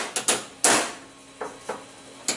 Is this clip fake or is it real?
real